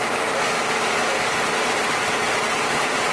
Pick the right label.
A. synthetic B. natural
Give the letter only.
B